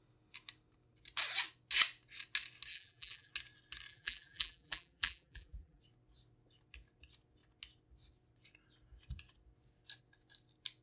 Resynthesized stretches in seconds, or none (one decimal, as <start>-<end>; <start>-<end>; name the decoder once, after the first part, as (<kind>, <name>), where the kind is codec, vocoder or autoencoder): 2.7-3.3 (vocoder, BigVGAN v2); 3.9-5.8

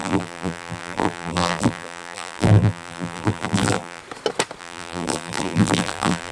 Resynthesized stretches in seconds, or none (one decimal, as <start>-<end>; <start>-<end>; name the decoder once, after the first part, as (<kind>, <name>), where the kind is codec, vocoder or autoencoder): 0.0-4.0 (vocoder, BigVGAN v2); 4.6-6.3